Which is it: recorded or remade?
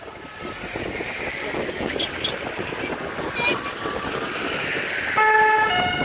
recorded